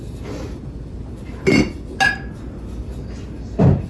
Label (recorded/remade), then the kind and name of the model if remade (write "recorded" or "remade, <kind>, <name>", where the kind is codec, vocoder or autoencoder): recorded